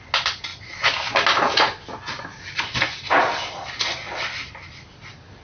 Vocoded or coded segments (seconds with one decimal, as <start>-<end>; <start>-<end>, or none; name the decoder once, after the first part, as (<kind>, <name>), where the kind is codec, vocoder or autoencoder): none